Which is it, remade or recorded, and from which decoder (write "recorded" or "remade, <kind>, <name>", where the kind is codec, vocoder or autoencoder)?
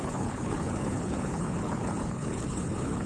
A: remade, codec, HILCodec